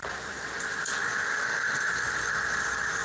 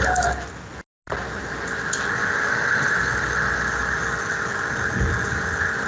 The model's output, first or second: first